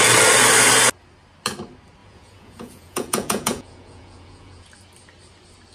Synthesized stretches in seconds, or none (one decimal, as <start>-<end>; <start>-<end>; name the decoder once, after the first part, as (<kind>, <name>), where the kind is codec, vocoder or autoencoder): 2.0-4.7 (vocoder, Vocos)